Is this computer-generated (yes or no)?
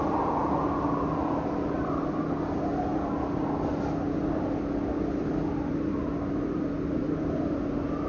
no